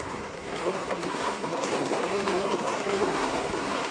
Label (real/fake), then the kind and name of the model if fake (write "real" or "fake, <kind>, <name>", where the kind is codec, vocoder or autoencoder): fake, codec, SNAC